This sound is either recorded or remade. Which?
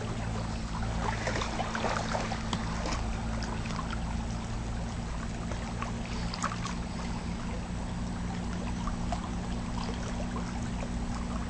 recorded